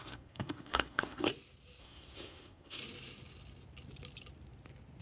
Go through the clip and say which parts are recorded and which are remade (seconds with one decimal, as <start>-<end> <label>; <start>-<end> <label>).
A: 0.0-1.3 remade; 1.3-1.8 recorded; 1.8-2.8 remade; 2.8-5.0 recorded